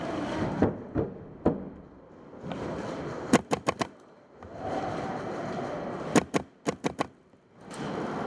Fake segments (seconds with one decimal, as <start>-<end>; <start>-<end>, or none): none